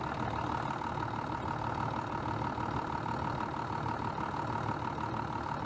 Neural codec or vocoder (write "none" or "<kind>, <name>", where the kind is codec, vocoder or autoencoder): none